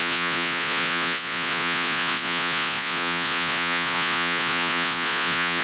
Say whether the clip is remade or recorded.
remade